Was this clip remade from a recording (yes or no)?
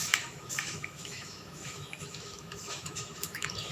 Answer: yes